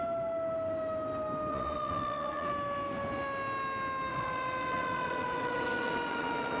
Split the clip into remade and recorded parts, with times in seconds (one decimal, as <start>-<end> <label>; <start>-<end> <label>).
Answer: 0.0-1.5 recorded; 1.5-2.5 remade; 2.5-4.1 recorded; 4.1-6.6 remade